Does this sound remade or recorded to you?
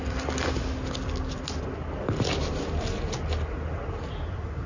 recorded